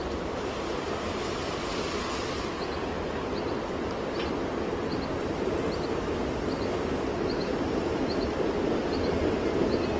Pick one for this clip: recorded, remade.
recorded